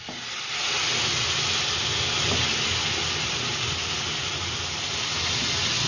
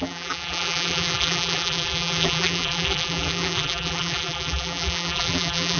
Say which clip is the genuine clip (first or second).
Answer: first